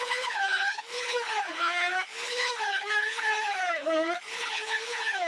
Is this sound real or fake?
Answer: fake